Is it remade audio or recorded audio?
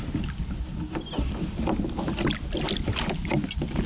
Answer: recorded